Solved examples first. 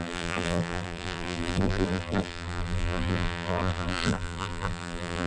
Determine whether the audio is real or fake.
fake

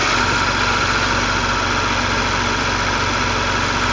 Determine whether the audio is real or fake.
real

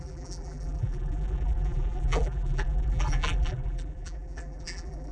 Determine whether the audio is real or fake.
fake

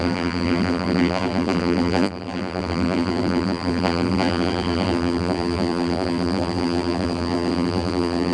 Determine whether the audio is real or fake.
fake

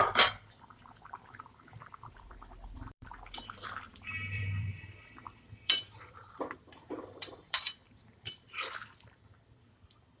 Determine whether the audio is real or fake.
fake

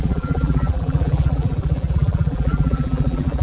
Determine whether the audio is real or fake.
fake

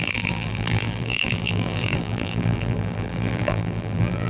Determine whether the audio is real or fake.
fake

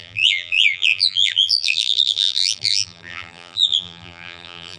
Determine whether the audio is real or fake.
fake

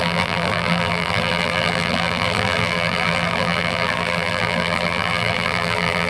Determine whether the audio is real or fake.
fake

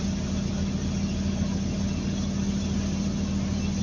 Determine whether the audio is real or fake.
real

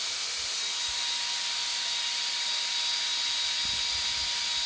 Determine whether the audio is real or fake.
real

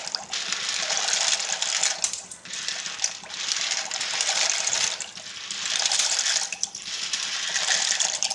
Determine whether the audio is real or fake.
fake